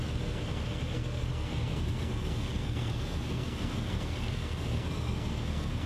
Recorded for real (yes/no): no